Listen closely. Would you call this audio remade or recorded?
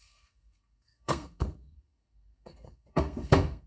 remade